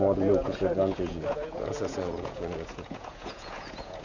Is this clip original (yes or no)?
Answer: no